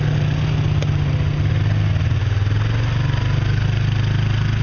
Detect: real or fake real